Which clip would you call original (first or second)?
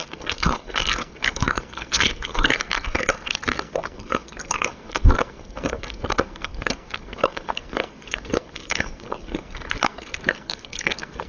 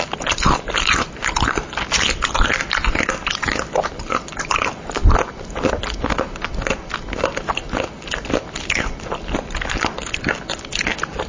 second